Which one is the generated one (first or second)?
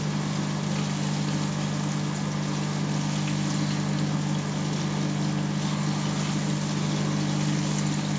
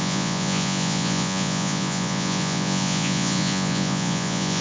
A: second